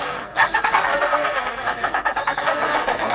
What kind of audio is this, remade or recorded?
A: remade